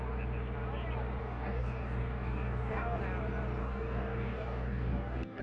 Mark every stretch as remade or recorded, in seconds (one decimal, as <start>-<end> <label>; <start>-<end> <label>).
0.0-1.2 recorded; 1.2-3.0 remade; 3.0-3.6 recorded; 3.6-5.4 remade